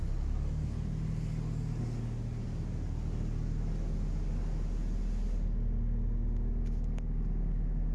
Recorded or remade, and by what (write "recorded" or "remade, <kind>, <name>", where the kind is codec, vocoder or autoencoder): recorded